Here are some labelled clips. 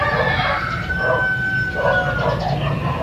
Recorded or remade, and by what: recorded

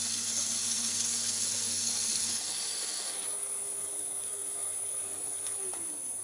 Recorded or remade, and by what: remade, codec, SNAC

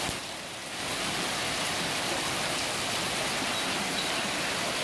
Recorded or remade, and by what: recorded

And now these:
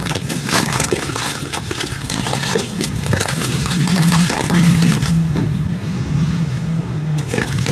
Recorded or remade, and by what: remade, codec, SNAC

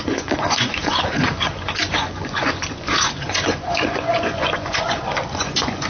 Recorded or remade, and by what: remade, vocoder, Vocos